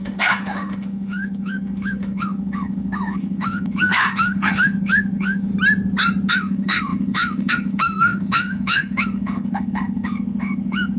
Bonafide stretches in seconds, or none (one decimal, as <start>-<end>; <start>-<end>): 5.5-6.3